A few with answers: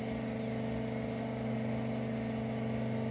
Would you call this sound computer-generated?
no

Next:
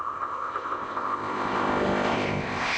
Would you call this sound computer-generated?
yes